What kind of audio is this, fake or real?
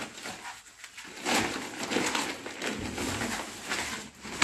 real